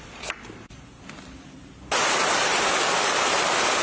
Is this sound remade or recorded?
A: recorded